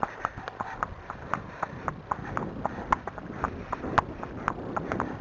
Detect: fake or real real